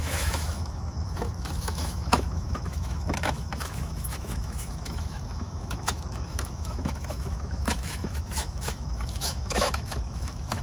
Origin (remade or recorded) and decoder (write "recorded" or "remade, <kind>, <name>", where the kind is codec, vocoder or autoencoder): remade, autoencoder, DAC-VAE